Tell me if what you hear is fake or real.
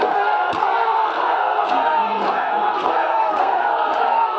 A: fake